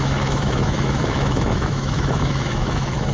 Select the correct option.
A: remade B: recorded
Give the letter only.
A